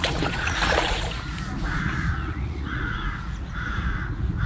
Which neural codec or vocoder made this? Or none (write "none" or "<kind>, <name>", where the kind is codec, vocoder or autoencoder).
vocoder, Vocos